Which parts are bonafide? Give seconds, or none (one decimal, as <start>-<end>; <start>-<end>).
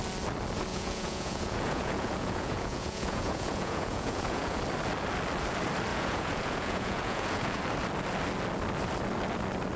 0.0-0.7; 4.6-5.9; 7.6-9.8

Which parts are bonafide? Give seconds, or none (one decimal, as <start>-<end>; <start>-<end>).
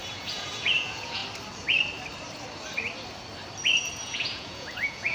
1.2-3.8